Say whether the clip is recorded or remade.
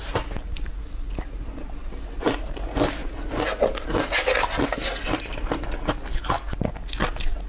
recorded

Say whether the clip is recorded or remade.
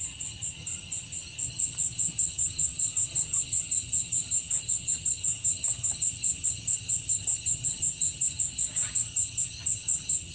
remade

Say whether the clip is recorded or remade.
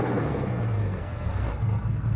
remade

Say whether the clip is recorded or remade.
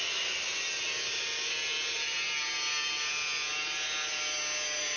recorded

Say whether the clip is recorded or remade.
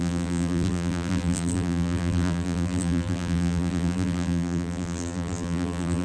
remade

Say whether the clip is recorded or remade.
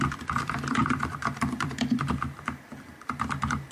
remade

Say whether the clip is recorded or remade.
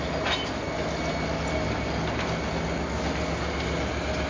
recorded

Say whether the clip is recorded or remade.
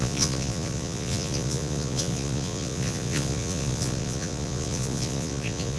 remade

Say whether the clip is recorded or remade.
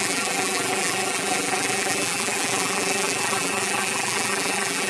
remade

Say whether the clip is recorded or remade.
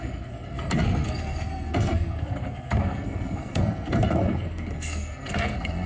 remade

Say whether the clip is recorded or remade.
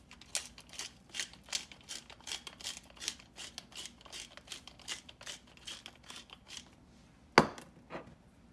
recorded